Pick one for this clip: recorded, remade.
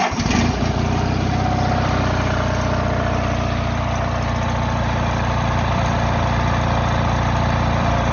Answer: recorded